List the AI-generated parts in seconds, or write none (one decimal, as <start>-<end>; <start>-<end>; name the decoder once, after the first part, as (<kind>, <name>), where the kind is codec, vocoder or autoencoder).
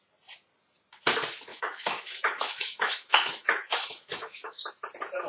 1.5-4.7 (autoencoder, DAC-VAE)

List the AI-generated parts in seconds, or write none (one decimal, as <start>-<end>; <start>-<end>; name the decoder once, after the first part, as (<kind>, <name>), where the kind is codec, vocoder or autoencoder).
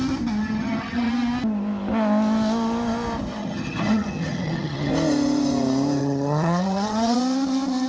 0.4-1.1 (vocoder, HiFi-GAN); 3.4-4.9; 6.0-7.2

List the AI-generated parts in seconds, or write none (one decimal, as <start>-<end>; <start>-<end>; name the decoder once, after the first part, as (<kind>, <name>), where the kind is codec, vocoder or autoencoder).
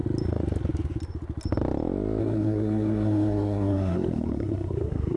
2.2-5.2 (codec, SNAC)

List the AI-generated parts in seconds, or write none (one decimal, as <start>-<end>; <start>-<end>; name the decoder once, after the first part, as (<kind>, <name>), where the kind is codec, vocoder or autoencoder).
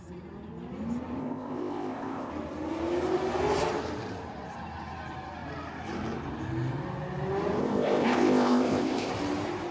1.2-2.3 (codec, ZipCodec); 7.6-9.1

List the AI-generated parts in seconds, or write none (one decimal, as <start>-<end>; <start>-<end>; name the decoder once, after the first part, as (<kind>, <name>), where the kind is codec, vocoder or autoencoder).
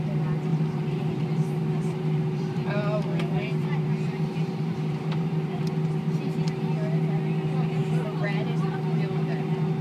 0.5-5.6 (vocoder, BigVGAN v2)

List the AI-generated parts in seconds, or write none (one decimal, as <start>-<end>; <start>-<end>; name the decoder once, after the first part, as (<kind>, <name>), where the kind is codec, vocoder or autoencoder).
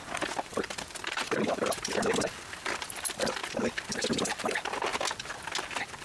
0.0-3.4 (vocoder, BigVGAN v2); 3.9-4.9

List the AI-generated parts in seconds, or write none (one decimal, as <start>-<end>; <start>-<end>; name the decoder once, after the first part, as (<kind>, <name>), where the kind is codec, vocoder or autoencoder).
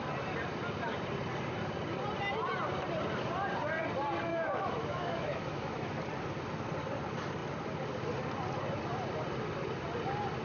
4.3-6.0 (autoencoder, DAC-VAE)